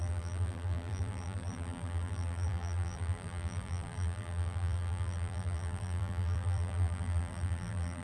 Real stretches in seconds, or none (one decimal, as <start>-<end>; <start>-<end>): none